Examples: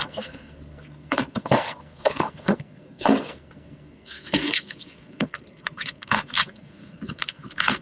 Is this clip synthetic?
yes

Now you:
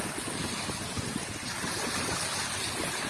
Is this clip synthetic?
no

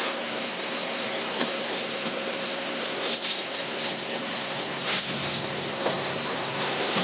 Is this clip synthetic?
yes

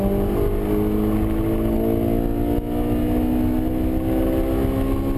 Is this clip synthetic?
no